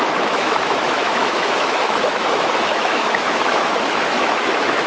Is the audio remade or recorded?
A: remade